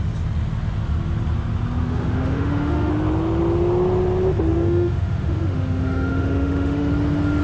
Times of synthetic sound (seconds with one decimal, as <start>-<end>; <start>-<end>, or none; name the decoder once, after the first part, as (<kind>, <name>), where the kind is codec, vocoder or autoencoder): 1.8-2.9 (autoencoder, DAC-VAE); 4.5-6.9